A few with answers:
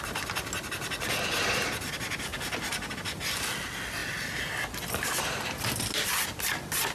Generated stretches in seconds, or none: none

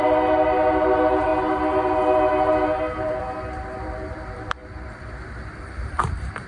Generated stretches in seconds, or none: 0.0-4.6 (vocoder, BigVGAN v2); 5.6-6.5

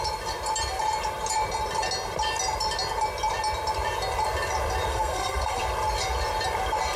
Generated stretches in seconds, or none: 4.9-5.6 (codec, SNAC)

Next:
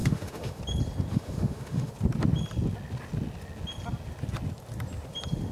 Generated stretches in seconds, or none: 0.0-0.6 (autoencoder, DAC-VAE); 1.1-1.9

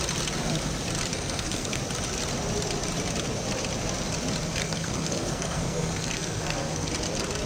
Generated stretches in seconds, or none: 1.1-1.8 (codec, SNAC); 4.6-6.9

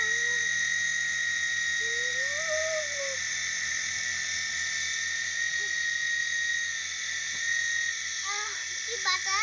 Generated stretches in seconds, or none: 2.6-3.9 (vocoder, BigVGAN v2)